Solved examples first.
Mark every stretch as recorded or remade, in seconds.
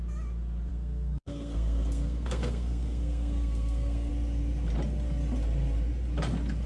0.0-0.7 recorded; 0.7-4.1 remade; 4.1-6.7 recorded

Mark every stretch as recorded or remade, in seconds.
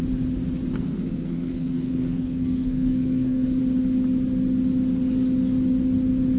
0.0-0.7 recorded; 0.7-3.6 remade; 3.6-6.4 recorded